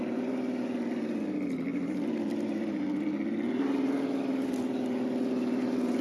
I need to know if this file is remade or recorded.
recorded